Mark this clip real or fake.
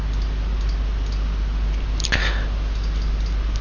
real